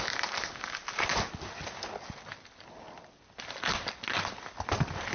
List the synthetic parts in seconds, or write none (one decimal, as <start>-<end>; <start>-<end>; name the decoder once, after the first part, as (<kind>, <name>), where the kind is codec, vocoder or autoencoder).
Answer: none